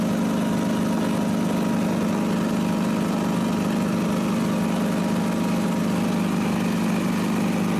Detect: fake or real real